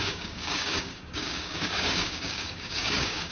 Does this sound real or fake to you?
fake